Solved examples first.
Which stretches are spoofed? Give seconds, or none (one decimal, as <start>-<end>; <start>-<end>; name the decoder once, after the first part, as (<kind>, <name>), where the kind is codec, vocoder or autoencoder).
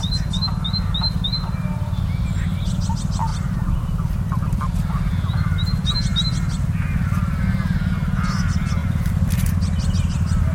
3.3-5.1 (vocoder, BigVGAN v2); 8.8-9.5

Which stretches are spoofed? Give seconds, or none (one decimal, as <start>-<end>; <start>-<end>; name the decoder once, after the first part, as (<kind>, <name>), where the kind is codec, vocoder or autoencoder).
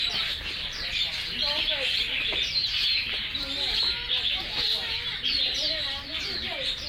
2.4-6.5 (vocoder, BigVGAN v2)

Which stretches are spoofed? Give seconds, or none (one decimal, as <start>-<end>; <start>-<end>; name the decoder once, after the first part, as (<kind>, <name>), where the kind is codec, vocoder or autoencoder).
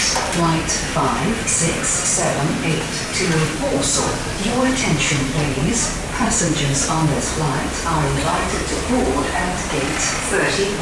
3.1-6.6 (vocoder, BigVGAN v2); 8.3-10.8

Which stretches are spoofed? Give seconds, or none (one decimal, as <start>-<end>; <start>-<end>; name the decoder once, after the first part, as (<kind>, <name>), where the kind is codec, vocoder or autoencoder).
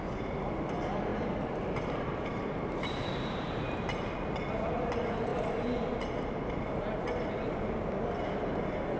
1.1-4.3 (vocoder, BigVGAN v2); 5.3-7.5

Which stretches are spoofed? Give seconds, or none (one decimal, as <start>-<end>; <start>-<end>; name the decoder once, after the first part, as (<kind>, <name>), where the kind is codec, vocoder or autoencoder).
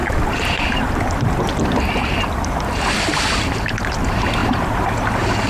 0.0-1.2 (vocoder, BigVGAN v2); 4.4-4.9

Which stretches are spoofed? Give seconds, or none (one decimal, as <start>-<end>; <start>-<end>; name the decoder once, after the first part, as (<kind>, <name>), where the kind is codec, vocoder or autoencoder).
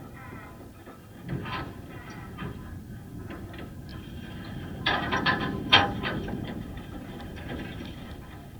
3.9-7.8 (vocoder, BigVGAN v2)